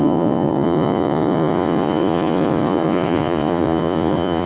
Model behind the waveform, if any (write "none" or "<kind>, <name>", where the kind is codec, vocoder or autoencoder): vocoder, Vocos